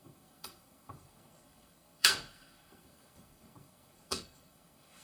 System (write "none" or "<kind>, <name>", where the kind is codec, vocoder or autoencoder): codec, SNAC